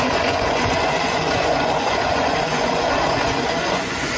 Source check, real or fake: fake